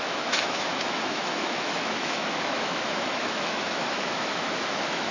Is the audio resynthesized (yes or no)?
yes